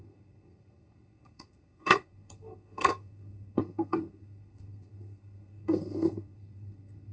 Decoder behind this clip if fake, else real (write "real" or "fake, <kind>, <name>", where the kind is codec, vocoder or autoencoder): fake, codec, SNAC